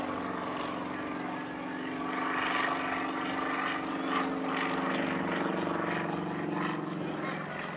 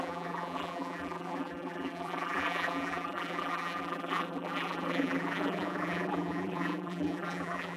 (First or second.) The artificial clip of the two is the second